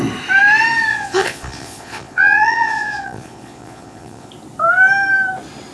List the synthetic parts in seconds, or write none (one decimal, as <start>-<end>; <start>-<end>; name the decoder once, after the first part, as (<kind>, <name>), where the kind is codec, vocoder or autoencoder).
0.9-4.3 (vocoder, Vocos)